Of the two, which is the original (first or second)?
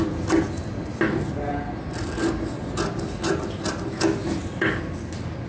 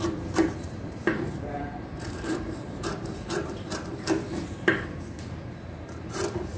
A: first